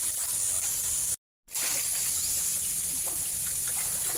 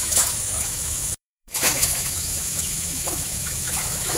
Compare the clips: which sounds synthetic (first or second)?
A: second